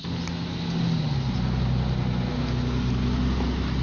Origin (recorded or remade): recorded